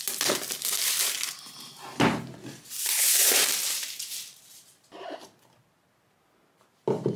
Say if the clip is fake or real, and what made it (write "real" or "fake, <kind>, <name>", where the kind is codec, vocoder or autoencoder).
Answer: real